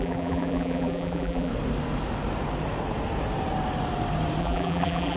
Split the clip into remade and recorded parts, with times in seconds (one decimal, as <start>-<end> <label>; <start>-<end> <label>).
0.0-1.5 remade; 1.5-4.4 recorded; 4.4-5.2 remade